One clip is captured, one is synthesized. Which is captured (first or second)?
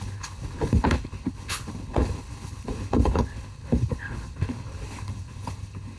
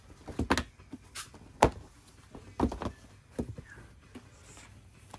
second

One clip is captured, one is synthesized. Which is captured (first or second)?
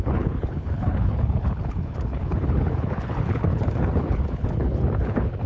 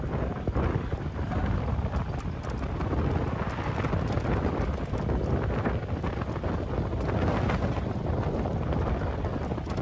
second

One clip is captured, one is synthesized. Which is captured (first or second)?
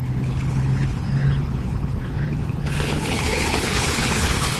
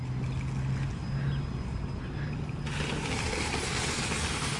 second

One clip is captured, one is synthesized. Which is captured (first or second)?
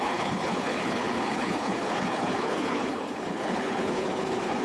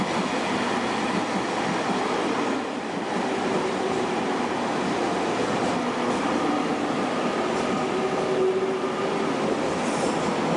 second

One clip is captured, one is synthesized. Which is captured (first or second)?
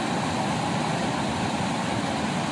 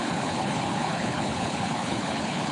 first